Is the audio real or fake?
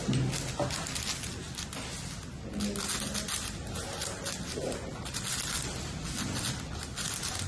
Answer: real